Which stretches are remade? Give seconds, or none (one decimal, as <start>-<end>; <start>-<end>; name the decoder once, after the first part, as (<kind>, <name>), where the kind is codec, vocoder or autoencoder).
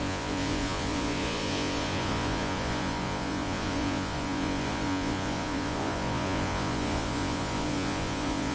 0.0-8.5 (vocoder, Vocos)